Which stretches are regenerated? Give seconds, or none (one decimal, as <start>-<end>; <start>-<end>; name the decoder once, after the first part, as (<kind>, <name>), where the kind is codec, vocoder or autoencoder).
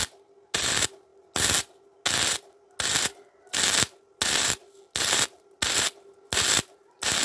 none